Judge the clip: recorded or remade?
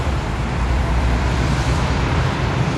remade